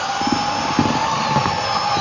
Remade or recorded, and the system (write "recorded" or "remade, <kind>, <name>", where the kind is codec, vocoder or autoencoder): recorded